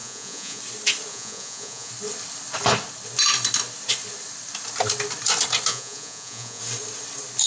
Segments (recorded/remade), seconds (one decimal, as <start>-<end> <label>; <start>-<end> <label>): 0.0-0.6 remade; 0.6-1.1 recorded; 1.1-1.9 remade; 1.9-5.7 recorded; 5.7-6.6 remade; 6.6-7.5 recorded